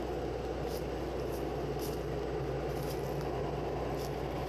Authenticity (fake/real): real